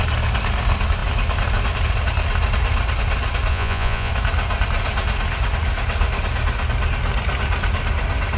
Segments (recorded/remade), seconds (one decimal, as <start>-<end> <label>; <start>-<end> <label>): 0.0-3.5 recorded; 3.5-4.1 remade; 4.1-8.4 recorded